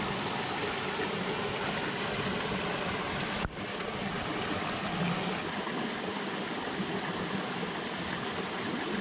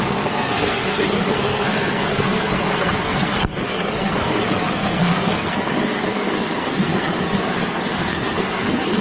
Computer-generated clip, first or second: second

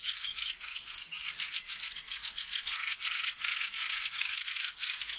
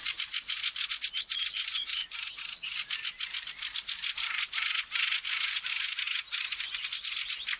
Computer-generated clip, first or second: first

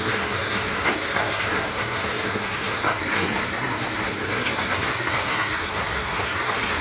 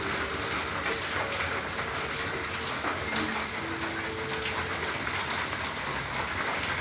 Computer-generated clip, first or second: first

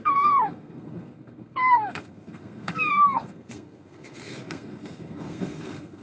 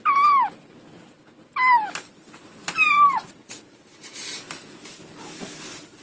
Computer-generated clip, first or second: first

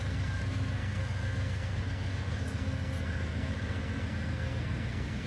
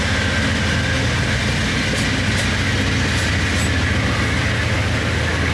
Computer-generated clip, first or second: first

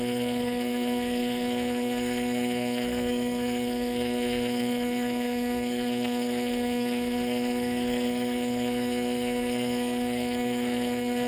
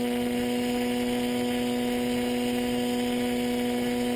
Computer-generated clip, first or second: first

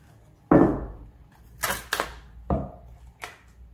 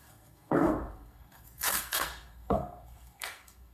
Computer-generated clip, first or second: second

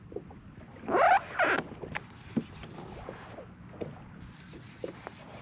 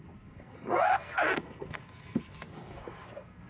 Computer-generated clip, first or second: second